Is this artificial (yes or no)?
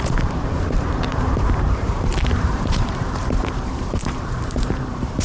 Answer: yes